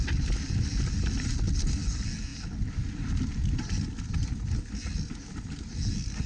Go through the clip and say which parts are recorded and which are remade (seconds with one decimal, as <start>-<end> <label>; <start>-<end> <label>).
0.0-6.3 recorded